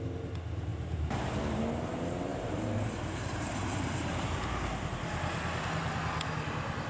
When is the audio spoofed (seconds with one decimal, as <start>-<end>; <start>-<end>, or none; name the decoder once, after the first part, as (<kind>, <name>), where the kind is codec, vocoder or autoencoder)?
0.7-1.6 (vocoder, BigVGAN v2); 2.3-4.5

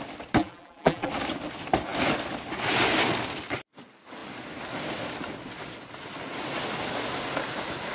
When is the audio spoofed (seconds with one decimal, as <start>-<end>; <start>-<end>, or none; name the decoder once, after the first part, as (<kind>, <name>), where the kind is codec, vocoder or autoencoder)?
0.4-1.1 (vocoder, BigVGAN v2)